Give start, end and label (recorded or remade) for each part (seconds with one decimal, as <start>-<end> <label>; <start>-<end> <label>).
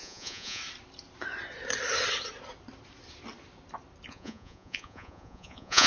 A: 0.0-0.6 remade; 0.6-4.1 recorded; 4.1-5.9 remade